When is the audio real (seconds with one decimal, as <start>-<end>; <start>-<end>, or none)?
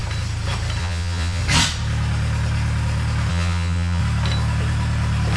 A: 0.0-0.8; 1.4-3.3; 4.0-5.4